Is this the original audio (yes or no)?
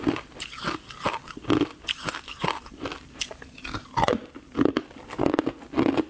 yes